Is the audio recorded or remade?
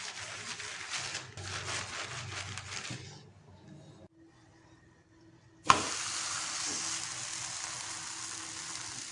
recorded